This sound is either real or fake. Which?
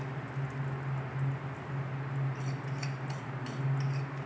real